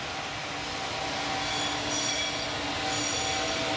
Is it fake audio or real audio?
real